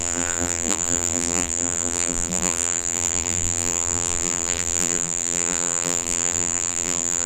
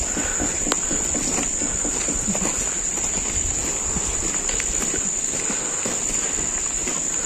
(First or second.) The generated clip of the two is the first